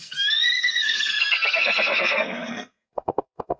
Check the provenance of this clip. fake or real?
fake